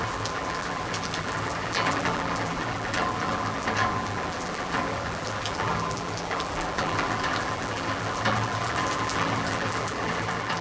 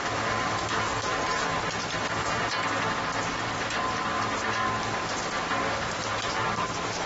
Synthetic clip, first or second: first